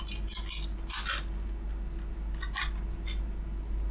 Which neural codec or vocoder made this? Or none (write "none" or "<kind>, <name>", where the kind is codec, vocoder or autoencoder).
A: none